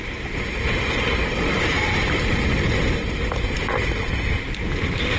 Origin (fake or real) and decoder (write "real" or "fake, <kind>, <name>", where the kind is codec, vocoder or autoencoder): fake, vocoder, BigVGAN v2